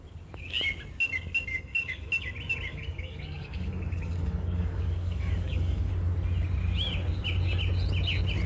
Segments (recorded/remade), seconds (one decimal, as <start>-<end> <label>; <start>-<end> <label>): 0.0-1.5 recorded; 1.5-2.3 remade; 2.3-2.7 recorded; 2.7-5.9 remade; 5.9-8.5 recorded

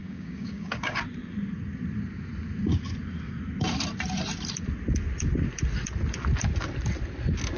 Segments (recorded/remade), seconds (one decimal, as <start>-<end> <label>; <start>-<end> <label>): 0.0-1.0 remade; 1.0-7.6 recorded

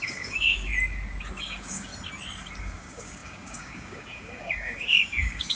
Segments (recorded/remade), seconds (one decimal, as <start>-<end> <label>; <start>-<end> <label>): 0.0-0.7 remade; 0.7-1.4 recorded; 1.4-1.9 remade; 1.9-2.6 recorded; 2.6-5.5 remade

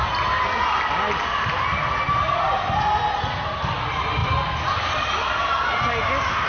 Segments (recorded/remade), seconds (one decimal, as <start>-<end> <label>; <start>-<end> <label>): 0.0-6.5 recorded

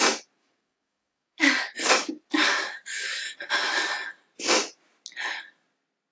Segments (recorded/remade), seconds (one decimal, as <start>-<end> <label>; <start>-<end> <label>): 0.0-0.4 recorded; 0.4-4.1 remade; 4.1-6.1 recorded